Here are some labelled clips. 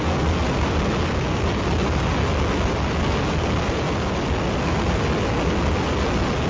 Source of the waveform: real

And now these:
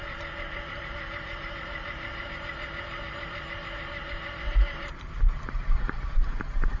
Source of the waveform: fake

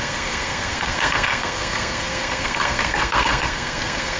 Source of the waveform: fake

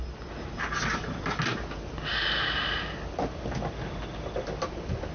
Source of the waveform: real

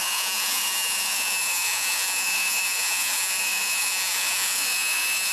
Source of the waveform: fake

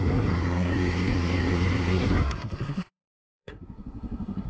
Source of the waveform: fake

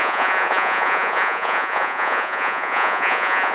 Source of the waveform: fake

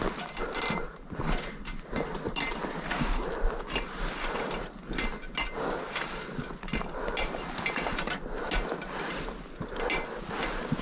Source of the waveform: real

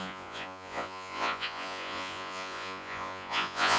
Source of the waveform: fake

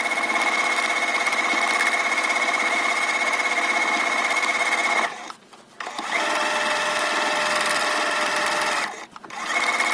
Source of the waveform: real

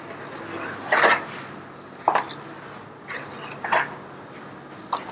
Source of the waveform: real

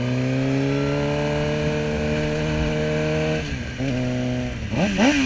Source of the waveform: real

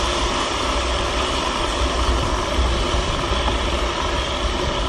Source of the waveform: real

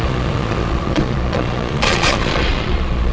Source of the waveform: fake